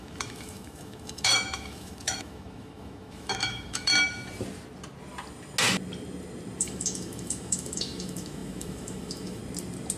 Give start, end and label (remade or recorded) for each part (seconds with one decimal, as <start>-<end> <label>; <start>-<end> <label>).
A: 0.0-3.9 remade; 3.9-6.6 recorded; 6.6-9.4 remade; 9.4-10.0 recorded